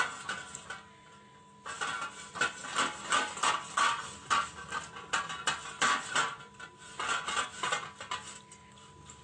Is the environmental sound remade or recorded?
recorded